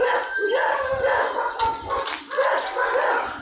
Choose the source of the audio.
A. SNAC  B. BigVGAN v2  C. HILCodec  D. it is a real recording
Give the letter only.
D